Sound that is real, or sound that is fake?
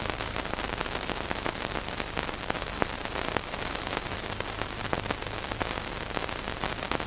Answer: fake